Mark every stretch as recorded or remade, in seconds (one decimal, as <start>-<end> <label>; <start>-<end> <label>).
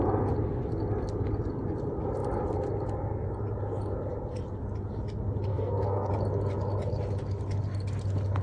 0.0-5.5 recorded; 5.5-6.1 remade; 6.1-8.4 recorded